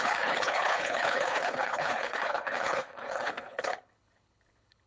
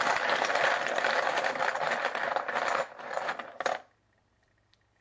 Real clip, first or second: second